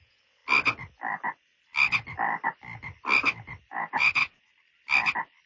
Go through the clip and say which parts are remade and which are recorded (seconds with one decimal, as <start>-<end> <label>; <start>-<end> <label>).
0.0-0.4 remade; 0.4-3.7 recorded; 3.7-4.2 remade; 4.2-5.5 recorded